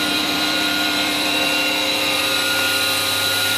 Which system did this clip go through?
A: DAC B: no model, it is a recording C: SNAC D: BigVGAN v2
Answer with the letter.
D